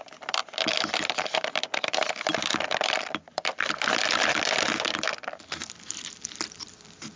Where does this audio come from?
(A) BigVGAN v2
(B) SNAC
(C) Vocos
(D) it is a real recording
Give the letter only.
A